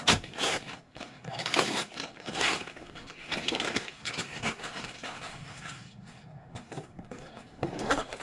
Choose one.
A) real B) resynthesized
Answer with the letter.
B